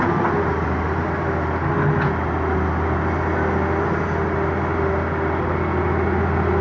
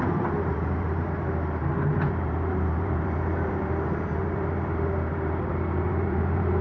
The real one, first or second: first